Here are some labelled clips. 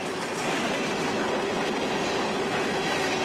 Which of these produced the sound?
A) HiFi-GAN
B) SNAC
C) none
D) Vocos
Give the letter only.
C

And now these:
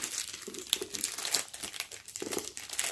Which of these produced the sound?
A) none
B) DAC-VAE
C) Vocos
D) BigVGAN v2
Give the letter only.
D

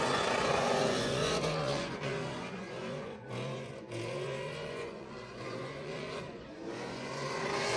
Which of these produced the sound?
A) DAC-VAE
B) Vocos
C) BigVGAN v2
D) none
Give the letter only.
B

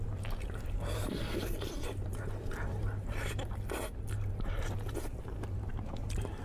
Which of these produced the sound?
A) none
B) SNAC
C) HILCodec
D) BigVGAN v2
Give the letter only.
D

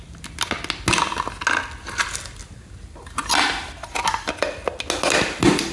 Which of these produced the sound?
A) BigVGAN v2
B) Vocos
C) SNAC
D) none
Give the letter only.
D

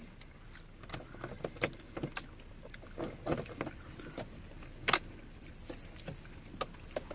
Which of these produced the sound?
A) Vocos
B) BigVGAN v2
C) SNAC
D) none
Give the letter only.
D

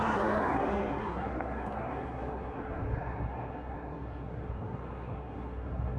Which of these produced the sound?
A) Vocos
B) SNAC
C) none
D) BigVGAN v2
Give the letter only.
B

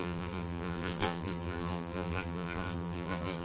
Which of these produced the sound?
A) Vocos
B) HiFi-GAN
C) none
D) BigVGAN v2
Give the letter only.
D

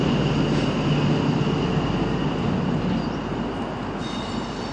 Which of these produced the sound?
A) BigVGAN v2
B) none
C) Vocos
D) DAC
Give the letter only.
B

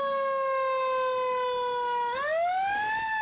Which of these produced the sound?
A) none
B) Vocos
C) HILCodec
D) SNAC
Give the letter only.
A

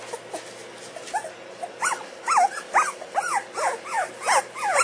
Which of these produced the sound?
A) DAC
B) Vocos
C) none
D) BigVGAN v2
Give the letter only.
C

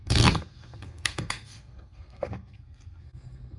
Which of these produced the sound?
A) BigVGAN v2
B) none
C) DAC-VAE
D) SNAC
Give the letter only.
D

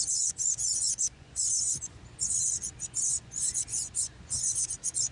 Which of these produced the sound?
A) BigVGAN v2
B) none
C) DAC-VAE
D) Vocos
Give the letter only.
D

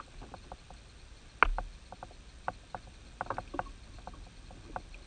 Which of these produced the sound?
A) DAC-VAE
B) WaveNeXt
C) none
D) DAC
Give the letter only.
C